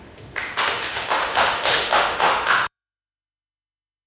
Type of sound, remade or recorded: remade